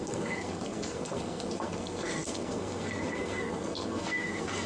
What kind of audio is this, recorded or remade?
remade